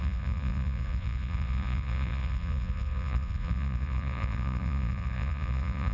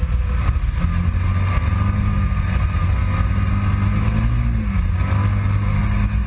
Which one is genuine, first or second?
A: second